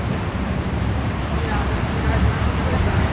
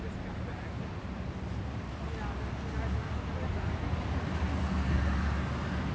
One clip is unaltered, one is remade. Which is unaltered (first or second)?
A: second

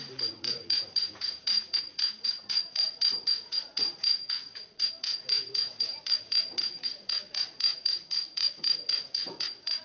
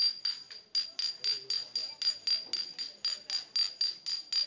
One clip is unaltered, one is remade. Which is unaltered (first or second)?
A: second